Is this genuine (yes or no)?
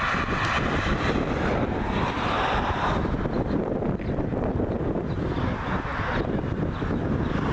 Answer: yes